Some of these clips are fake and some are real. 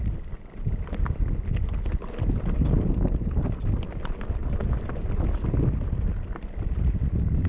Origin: real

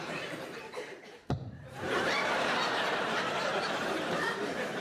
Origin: fake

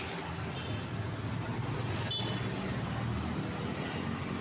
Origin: real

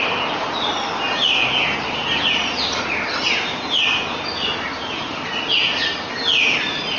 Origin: real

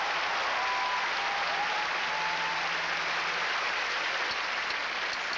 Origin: real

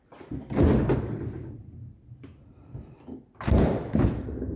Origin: fake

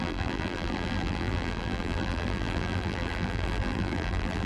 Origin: fake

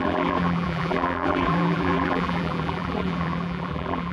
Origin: fake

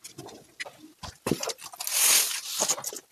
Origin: real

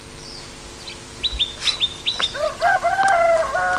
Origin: real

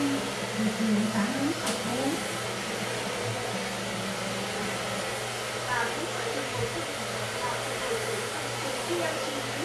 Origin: real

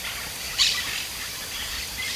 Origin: fake